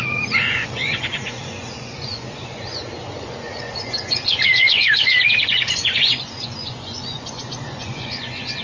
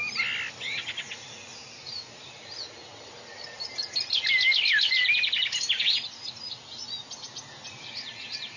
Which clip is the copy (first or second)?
first